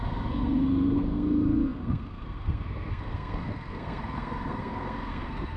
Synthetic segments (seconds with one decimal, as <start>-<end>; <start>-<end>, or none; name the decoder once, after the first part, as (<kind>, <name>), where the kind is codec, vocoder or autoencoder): 0.0-5.6 (codec, SNAC)